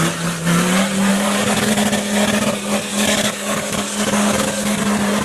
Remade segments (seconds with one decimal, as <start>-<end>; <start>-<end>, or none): 1.1-1.7; 2.9-4.8

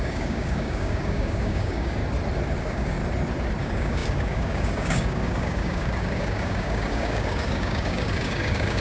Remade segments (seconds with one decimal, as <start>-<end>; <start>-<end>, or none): 0.0-2.0; 2.6-3.0; 3.6-8.8

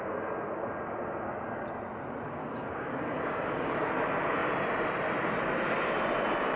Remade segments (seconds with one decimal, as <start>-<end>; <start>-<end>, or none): 2.4-3.9

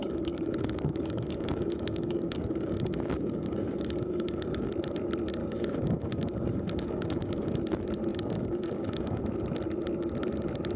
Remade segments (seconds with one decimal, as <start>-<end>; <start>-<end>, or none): 0.0-4.7; 5.4-7.6; 8.1-9.2

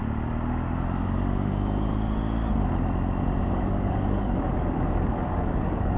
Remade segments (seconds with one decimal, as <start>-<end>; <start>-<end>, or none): 3.5-6.0

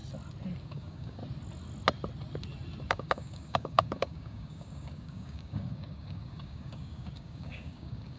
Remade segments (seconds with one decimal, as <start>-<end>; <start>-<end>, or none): 0.6-1.2; 2.9-8.2

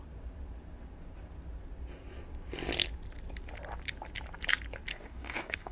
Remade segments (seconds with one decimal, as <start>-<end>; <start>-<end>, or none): 4.9-5.7

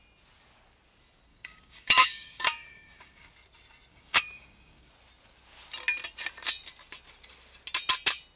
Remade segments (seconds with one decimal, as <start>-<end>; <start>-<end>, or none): 1.3-3.3; 3.9-4.9